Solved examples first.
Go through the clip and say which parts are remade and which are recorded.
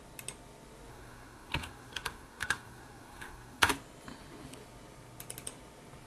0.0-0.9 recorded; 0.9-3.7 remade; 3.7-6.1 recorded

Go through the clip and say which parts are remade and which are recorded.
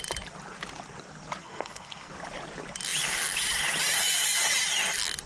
0.0-1.4 recorded; 1.4-2.1 remade; 2.1-5.3 recorded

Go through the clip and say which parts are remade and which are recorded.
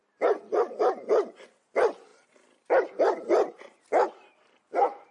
0.0-5.1 recorded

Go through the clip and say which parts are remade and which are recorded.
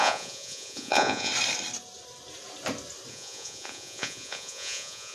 0.0-1.3 remade; 1.3-3.1 recorded; 3.1-5.1 remade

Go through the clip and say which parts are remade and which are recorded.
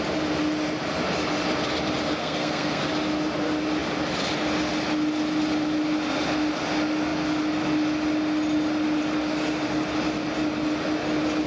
0.0-2.2 recorded; 2.2-2.8 remade; 2.8-11.5 recorded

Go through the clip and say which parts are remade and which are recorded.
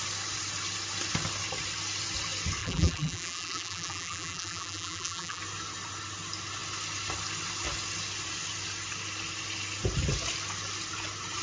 0.0-2.6 recorded; 2.6-5.4 remade; 5.4-11.4 recorded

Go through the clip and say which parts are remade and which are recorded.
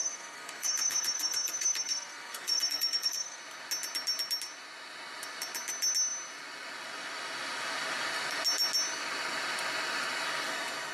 0.0-3.4 remade; 3.4-10.9 recorded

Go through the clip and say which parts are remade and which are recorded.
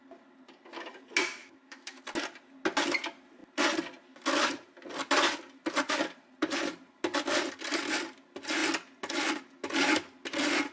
0.0-1.4 recorded; 1.4-2.0 remade; 2.0-10.7 recorded